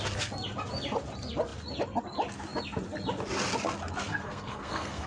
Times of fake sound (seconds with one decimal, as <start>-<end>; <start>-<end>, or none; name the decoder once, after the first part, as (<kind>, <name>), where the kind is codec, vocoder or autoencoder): 4.1-5.1 (codec, SNAC)